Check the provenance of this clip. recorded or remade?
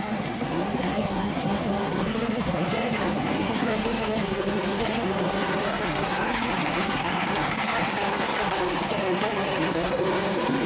remade